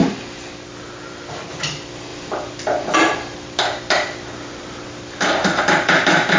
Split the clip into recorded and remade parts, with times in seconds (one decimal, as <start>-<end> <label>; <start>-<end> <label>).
0.0-6.4 recorded